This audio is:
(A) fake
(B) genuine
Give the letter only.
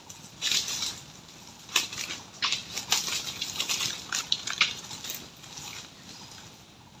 B